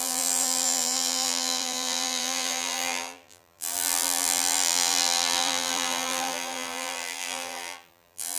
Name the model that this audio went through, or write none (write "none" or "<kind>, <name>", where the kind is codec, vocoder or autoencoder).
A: vocoder, BigVGAN v2